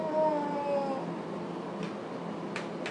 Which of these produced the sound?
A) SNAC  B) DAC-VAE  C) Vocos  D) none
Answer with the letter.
D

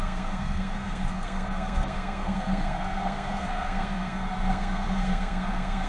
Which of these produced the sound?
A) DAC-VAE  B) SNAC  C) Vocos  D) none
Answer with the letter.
B